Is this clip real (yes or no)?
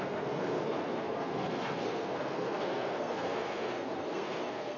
no